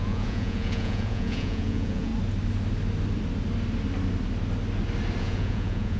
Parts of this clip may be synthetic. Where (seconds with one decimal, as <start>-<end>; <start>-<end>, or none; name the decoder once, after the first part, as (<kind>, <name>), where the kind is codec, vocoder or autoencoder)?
0.0-2.1 (vocoder, Vocos); 5.2-6.0